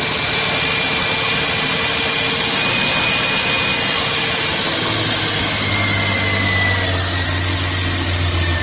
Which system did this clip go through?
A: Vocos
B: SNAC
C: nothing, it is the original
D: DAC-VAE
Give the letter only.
C